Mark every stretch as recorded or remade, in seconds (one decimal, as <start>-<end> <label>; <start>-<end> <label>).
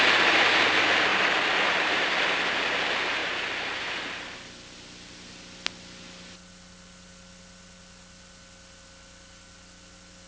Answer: 0.0-1.1 recorded; 1.1-2.2 remade; 2.2-3.2 recorded; 3.2-3.8 remade; 3.8-10.3 recorded